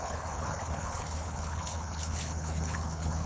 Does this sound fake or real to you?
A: fake